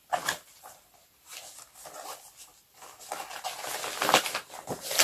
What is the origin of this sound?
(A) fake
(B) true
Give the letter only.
B